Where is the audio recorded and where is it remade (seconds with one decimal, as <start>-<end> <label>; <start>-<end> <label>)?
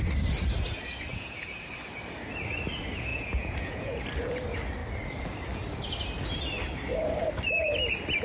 0.0-1.1 recorded; 1.1-1.7 remade; 1.7-3.1 recorded; 3.1-4.0 remade; 4.0-8.2 recorded